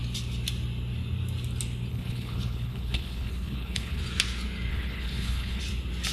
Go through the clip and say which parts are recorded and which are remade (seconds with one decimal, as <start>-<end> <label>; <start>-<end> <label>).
0.0-1.9 recorded; 1.9-4.0 remade; 4.0-4.7 recorded; 4.7-5.6 remade; 5.6-6.1 recorded

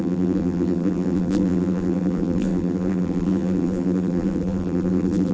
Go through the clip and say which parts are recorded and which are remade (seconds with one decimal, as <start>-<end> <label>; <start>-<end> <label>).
0.0-5.3 remade

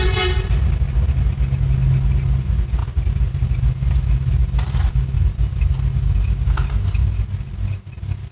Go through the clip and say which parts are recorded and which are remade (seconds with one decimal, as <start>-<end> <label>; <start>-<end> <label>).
0.0-8.3 recorded

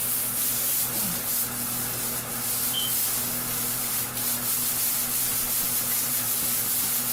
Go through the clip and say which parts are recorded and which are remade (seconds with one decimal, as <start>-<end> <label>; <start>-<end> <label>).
0.0-7.1 recorded

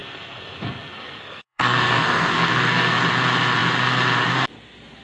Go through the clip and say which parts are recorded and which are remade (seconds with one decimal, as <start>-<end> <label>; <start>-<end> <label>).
0.0-3.0 remade; 3.0-5.0 recorded

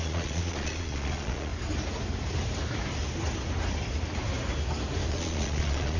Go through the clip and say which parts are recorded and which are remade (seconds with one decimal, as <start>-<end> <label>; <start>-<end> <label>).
0.0-1.5 remade; 1.5-5.1 recorded; 5.1-6.0 remade